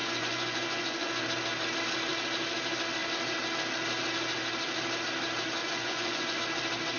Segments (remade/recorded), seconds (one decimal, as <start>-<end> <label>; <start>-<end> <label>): 0.0-1.2 remade; 1.2-5.6 recorded; 5.6-6.4 remade; 6.4-7.0 recorded